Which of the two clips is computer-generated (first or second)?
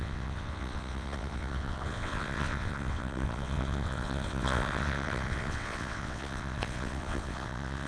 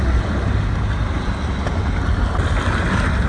first